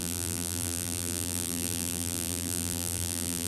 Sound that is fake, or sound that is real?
fake